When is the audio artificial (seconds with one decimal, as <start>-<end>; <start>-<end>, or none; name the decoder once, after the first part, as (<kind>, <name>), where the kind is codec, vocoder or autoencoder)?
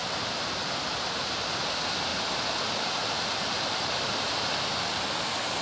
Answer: 0.0-0.6 (vocoder, BigVGAN v2); 2.1-4.5